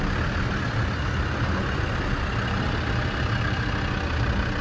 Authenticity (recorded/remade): recorded